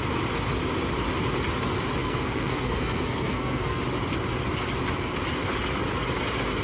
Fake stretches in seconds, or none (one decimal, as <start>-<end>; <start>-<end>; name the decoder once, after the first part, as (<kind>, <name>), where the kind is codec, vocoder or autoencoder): 2.0-3.8 (codec, SNAC)